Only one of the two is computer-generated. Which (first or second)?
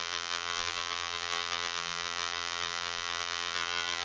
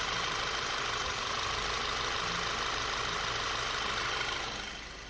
first